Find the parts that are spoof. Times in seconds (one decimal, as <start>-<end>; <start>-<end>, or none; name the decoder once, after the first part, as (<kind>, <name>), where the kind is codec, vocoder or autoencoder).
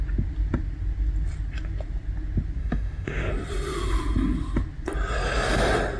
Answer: 2.6-3.3 (autoencoder, DAC-VAE)